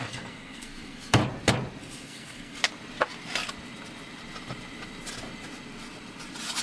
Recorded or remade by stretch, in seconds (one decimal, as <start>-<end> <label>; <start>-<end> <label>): 0.0-1.2 remade; 1.2-1.8 recorded; 1.8-2.6 remade; 2.6-6.6 recorded